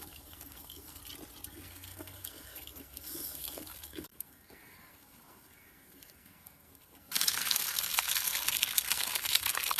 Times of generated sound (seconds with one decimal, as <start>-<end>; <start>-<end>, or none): 0.0-1.0; 1.5-9.8